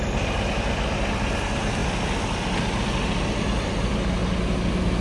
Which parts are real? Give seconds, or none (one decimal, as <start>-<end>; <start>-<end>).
0.0-5.0